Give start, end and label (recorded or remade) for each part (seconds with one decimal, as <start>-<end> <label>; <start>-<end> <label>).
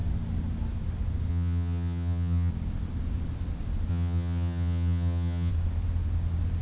0.0-1.3 recorded; 1.3-2.5 remade; 2.5-3.9 recorded; 3.9-5.5 remade; 5.5-6.6 recorded